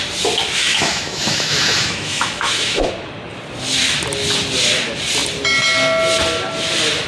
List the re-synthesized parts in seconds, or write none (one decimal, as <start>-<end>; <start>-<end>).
0.6-2.9